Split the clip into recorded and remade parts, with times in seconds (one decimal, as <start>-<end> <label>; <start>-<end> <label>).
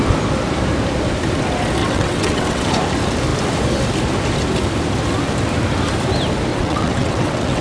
0.0-1.8 recorded; 1.8-2.7 remade; 2.7-6.5 recorded; 6.5-7.6 remade